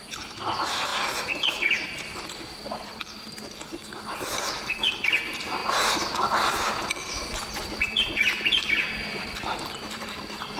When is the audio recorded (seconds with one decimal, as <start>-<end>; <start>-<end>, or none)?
0.0-10.6